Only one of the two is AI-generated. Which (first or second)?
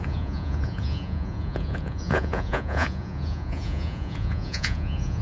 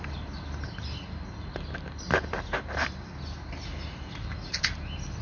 first